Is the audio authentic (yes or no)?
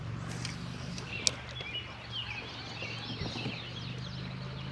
yes